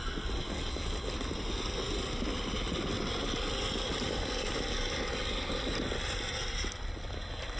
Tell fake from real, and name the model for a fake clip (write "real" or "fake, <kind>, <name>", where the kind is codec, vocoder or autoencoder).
real